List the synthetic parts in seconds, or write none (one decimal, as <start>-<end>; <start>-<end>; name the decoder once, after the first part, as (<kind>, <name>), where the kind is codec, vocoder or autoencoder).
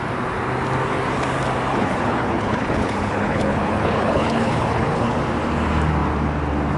1.7-5.2 (codec, HILCodec)